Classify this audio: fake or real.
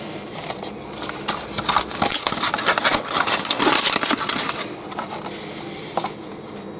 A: real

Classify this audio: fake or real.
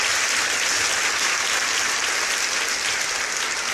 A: real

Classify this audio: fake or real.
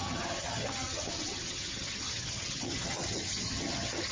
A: fake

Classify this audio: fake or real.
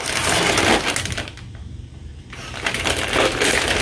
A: real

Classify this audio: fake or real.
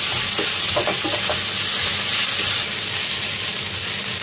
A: real